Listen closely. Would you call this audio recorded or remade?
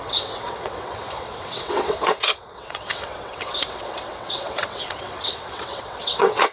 remade